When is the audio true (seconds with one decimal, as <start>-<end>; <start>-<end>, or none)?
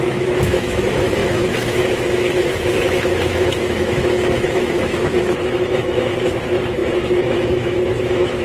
none